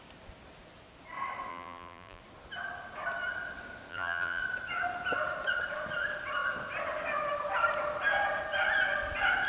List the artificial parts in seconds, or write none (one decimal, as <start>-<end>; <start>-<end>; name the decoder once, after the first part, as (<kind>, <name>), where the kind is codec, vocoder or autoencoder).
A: 1.5-2.2 (vocoder, BigVGAN v2); 3.9-4.4